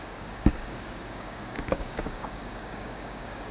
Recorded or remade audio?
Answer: remade